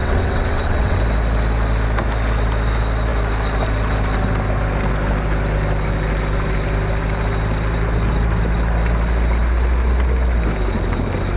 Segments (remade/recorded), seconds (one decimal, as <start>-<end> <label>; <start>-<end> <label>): 0.0-1.0 remade; 1.0-11.4 recorded